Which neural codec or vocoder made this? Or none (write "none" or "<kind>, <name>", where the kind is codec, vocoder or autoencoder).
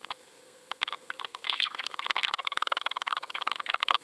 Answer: codec, SNAC